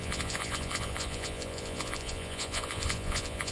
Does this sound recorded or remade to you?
remade